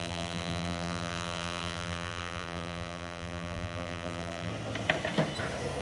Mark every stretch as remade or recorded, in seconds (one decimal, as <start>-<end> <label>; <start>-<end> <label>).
0.0-4.5 remade; 4.5-5.8 recorded